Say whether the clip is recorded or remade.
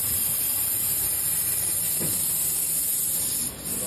recorded